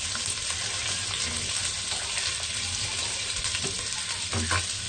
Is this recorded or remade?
recorded